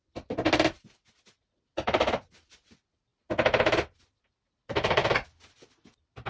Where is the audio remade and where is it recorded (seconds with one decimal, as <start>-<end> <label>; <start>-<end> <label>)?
0.0-6.3 recorded